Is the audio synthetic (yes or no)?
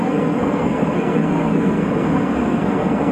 yes